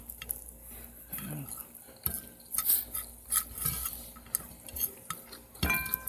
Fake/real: real